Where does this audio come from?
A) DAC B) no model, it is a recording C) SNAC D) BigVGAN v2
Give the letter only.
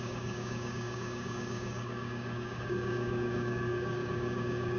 A